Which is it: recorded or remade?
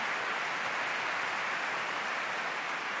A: recorded